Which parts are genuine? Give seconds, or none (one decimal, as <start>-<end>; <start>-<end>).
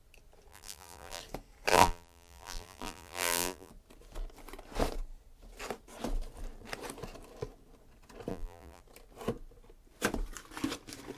0.0-0.5; 1.2-1.7; 3.7-8.3; 8.8-11.2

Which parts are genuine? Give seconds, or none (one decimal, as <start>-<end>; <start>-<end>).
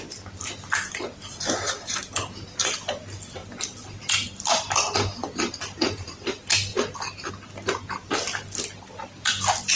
0.0-1.3; 2.0-3.4; 4.0-9.8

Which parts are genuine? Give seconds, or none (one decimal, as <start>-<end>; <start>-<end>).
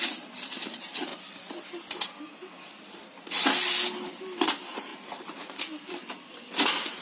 1.1-4.1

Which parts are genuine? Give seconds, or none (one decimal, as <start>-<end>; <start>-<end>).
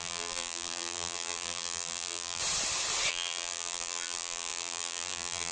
2.4-3.1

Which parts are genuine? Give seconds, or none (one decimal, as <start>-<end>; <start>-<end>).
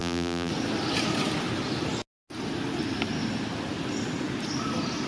0.5-5.1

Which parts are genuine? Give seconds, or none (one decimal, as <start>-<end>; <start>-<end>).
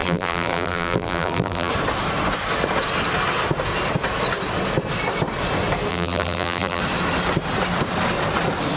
1.7-5.9; 6.8-8.8